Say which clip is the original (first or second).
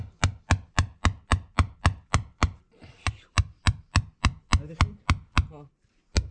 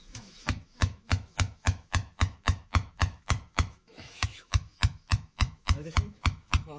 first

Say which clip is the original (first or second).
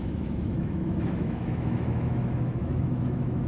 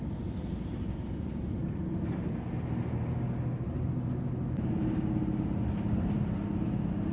second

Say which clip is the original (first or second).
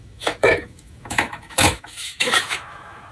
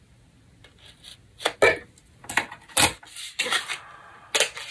second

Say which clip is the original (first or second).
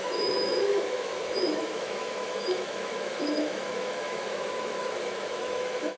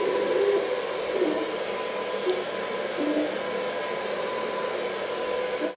second